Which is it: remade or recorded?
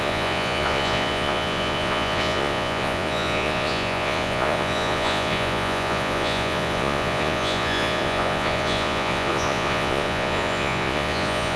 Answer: remade